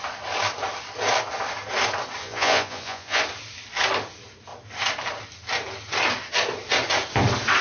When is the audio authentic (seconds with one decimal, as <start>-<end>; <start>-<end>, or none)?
0.0-2.2; 3.2-7.6